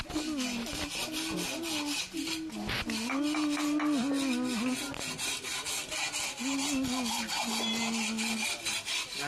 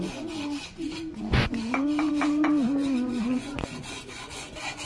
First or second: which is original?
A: first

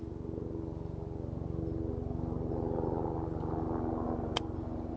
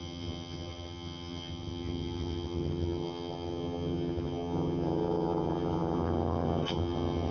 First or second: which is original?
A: first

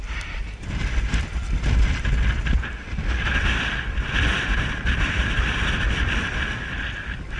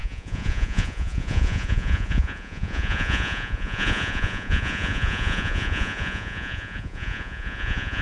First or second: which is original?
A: first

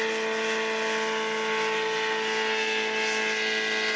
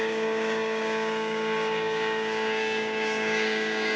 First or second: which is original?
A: first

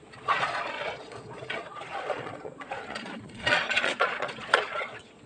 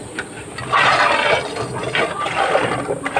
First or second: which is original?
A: second